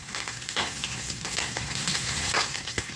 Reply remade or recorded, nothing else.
remade